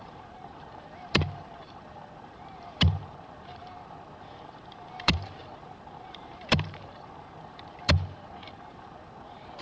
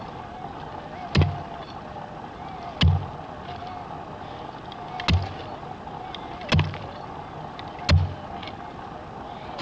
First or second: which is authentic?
second